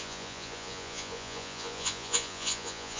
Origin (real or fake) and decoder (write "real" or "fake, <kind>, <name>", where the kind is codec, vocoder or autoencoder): fake, vocoder, Vocos